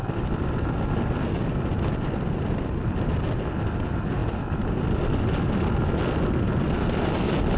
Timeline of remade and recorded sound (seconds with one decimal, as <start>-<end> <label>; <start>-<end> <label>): 0.0-7.6 recorded